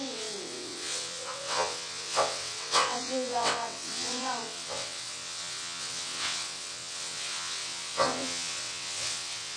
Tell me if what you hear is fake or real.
fake